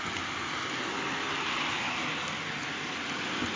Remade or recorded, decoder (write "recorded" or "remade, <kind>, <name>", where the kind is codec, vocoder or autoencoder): recorded